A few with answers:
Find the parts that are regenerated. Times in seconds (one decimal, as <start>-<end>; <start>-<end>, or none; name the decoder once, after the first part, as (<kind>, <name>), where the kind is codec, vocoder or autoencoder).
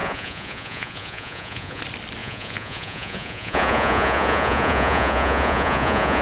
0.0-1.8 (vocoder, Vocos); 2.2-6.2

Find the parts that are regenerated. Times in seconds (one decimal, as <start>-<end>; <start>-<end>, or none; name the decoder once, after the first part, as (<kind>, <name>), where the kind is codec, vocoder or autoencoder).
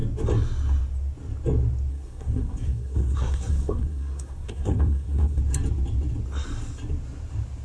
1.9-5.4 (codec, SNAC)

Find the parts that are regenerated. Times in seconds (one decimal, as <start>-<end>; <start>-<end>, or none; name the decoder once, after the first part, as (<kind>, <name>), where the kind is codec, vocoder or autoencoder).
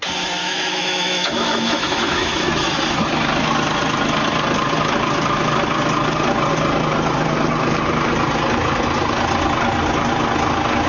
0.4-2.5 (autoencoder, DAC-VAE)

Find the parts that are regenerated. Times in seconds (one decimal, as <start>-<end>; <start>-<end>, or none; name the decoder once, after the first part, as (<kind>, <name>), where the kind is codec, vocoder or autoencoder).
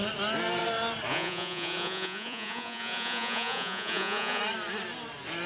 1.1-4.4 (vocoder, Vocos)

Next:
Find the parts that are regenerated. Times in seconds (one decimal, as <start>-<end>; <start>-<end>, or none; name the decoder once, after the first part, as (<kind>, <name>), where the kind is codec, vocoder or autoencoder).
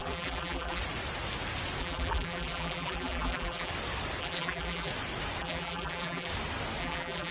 0.0-0.8 (vocoder, BigVGAN v2); 1.8-3.7; 4.2-4.9; 5.4-6.3; 6.8-7.3